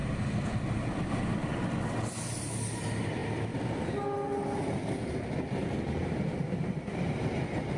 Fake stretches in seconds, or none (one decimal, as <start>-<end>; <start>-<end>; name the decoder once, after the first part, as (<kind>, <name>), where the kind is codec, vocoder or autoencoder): 0.0-1.4 (vocoder, BigVGAN v2)